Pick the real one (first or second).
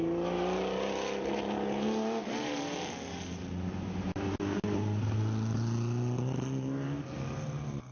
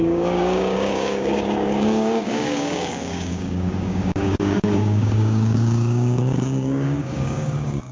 first